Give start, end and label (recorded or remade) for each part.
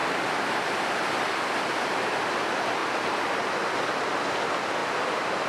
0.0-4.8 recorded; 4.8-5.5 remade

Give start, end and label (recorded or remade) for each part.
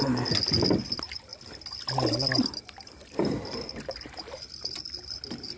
0.0-5.6 recorded